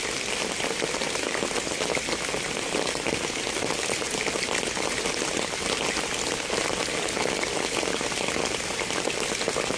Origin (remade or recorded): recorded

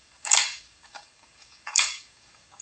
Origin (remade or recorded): remade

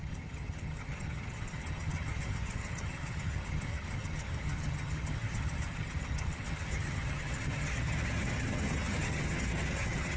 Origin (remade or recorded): remade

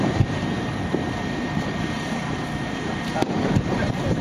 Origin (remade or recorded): remade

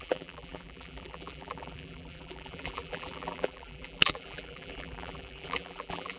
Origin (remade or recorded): remade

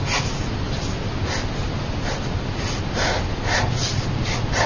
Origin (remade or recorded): recorded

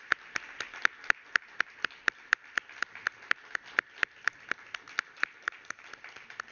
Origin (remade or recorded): recorded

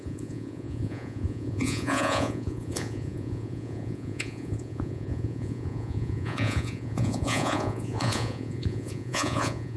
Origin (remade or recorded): remade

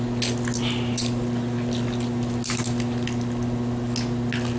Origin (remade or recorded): recorded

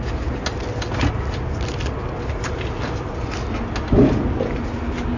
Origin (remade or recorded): recorded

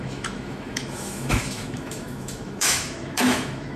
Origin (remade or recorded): remade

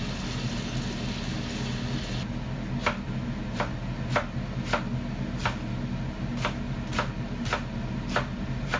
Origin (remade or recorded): recorded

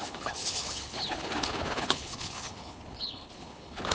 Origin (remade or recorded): remade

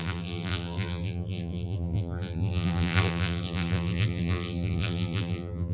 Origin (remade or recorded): remade